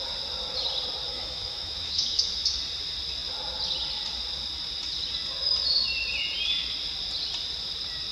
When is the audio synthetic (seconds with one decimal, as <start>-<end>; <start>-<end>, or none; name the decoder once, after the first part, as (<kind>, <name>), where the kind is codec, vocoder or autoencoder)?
1.1-2.3 (autoencoder, DAC-VAE)